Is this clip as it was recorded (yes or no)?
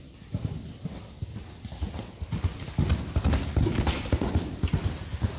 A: yes